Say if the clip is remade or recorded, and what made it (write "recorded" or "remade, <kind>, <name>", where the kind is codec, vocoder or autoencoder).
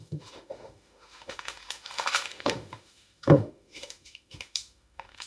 remade, autoencoder, DAC-VAE